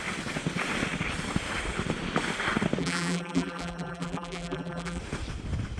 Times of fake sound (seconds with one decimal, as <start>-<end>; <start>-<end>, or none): 2.8-5.0